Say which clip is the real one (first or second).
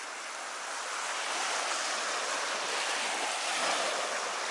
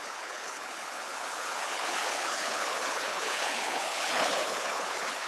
first